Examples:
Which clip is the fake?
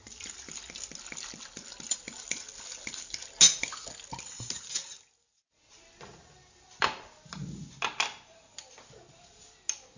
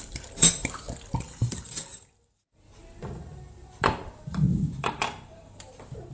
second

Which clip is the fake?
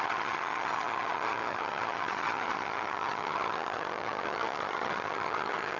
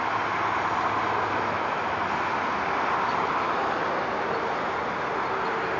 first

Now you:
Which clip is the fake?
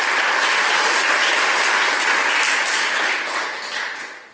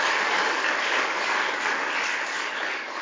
second